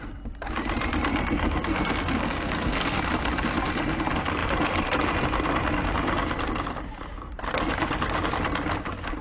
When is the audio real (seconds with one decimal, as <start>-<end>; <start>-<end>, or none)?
0.0-1.4; 3.0-9.2